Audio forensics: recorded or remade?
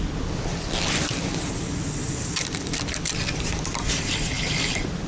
recorded